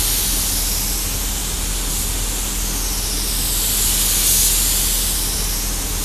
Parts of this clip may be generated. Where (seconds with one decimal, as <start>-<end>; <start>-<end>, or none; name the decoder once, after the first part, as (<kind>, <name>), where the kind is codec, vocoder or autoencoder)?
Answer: none